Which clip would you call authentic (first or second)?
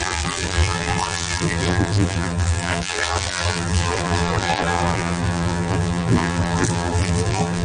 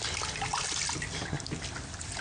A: second